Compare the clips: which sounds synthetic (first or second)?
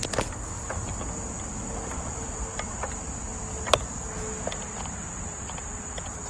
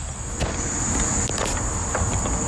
second